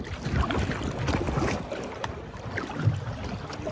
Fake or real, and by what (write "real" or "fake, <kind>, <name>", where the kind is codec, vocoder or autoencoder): real